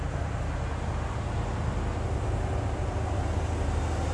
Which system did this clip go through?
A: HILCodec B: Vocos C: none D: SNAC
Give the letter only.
C